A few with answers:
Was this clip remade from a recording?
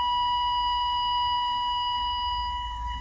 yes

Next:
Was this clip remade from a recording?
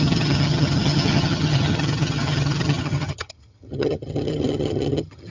yes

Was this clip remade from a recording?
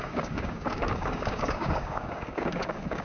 yes